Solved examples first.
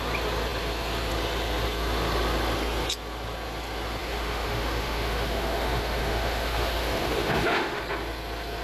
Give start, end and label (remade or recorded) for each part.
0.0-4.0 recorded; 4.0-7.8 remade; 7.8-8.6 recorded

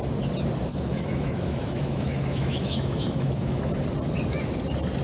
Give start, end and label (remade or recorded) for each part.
0.0-0.7 recorded; 0.7-3.7 remade; 3.7-5.0 recorded

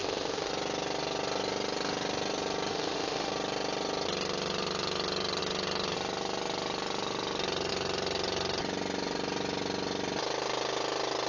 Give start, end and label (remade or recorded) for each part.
0.0-0.5 remade; 0.5-2.7 recorded; 2.7-3.3 remade; 3.3-11.3 recorded

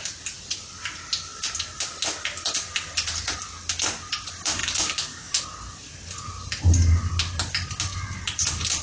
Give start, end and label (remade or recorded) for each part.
0.0-4.6 recorded; 4.6-5.4 remade; 5.4-8.8 recorded

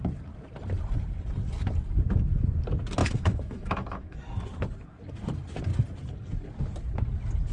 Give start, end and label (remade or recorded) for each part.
0.0-3.0 recorded; 3.0-4.2 remade; 4.2-7.5 recorded

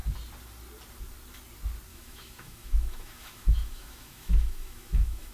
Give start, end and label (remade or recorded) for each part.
0.0-1.9 recorded; 1.9-5.3 remade

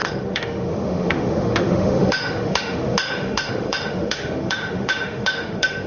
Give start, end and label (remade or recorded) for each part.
0.0-5.9 remade